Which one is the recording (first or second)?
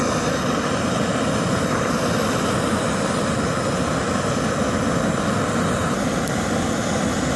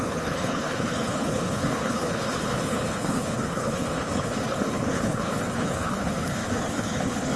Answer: first